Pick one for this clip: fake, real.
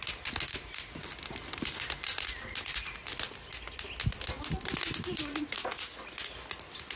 real